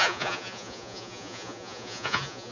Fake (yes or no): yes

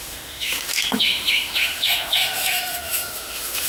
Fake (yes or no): yes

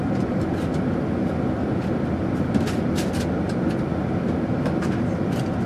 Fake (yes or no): no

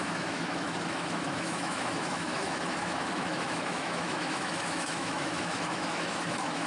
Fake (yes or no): yes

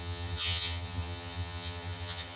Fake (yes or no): yes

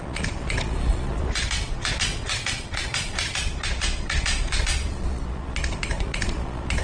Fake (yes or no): yes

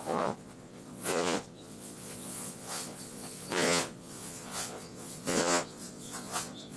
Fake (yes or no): yes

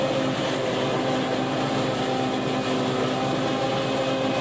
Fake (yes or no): no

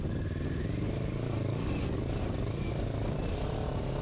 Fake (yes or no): no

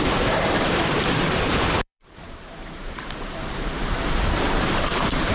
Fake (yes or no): yes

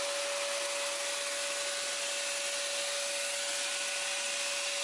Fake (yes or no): no